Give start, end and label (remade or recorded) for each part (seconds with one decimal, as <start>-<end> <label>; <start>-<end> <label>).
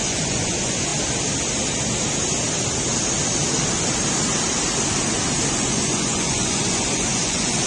0.0-0.9 remade; 0.9-5.5 recorded; 5.5-7.7 remade